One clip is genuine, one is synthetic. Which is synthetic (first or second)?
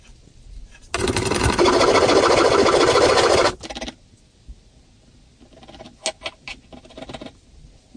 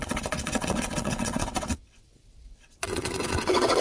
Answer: second